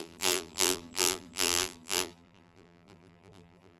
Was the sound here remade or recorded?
remade